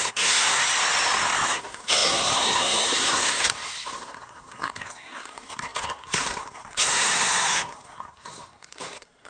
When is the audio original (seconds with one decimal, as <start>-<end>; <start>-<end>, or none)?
0.6-1.5